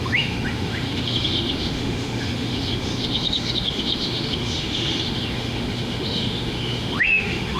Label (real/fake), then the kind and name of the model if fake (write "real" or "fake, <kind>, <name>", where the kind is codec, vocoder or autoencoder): fake, autoencoder, DAC-VAE